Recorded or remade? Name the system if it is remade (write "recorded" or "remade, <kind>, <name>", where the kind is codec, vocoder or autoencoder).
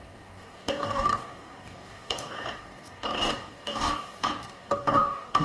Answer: remade, codec, DAC